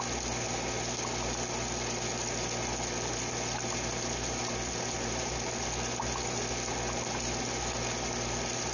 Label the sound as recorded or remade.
recorded